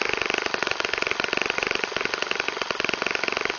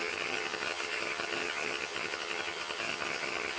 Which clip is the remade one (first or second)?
second